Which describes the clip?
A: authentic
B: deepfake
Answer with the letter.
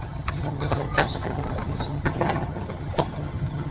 B